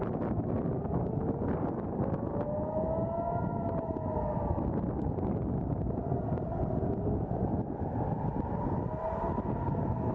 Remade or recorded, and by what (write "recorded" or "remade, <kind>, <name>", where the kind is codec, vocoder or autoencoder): recorded